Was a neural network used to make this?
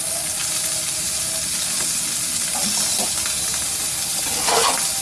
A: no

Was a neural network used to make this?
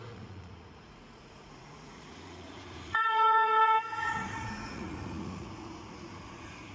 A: yes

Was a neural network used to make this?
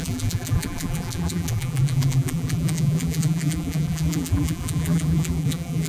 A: yes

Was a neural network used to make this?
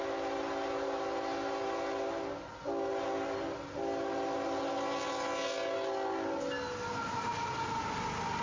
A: no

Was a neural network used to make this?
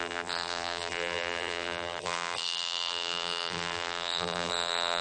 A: yes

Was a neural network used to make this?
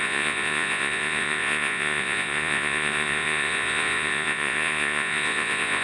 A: yes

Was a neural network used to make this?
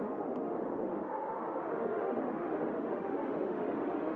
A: yes